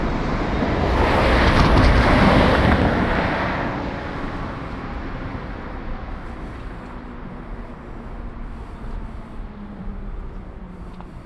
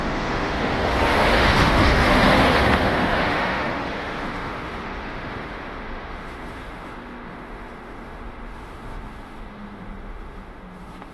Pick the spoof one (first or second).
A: second